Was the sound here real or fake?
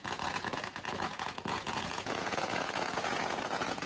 fake